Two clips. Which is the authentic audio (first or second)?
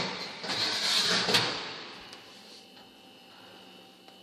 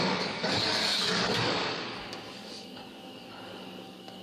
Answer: first